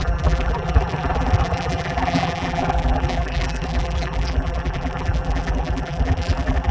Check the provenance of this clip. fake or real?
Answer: fake